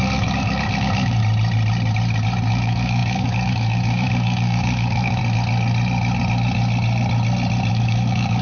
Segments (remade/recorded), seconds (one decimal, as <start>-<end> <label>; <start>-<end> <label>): 0.0-1.2 remade; 1.2-2.5 recorded; 2.5-5.2 remade; 5.2-7.7 recorded; 7.7-8.4 remade